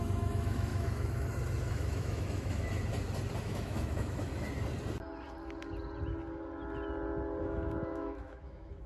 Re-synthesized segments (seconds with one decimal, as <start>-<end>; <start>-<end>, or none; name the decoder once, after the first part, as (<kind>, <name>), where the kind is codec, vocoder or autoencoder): 0.0-2.8 (autoencoder, DAC-VAE); 3.4-4.3; 7.4-8.9